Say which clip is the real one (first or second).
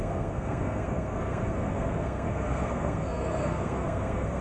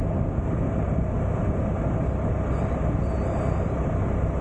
second